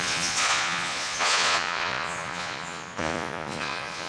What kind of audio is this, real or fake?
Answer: fake